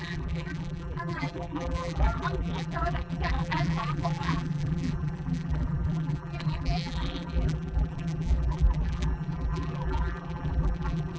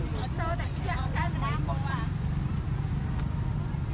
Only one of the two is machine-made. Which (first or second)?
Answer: first